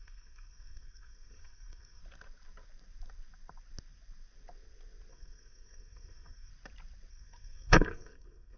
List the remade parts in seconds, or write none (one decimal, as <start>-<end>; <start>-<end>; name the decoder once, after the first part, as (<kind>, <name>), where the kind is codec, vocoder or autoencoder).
0.0-2.0 (codec, SNAC); 5.1-6.5; 7.1-8.6